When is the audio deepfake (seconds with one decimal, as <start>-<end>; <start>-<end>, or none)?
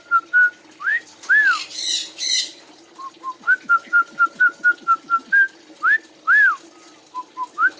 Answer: none